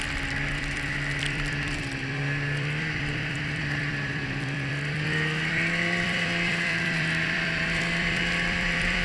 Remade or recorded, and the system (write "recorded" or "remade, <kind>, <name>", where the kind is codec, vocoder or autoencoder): remade, vocoder, BigVGAN v2